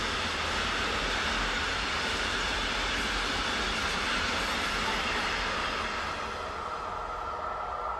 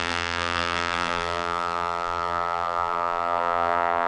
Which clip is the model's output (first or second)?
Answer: second